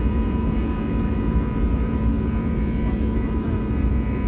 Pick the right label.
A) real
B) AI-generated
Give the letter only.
B